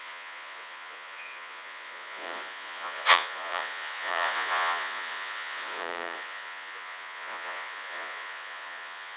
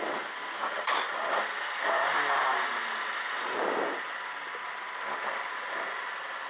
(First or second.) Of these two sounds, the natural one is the second